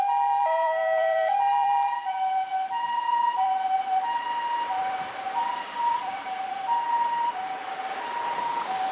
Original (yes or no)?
no